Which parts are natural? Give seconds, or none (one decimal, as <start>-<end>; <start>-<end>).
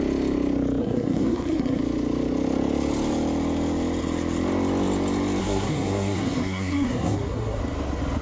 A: 0.0-0.8; 1.8-5.4; 7.6-8.2